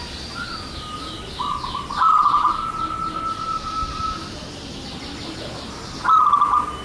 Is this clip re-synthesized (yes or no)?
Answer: no